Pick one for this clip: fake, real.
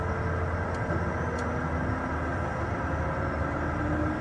real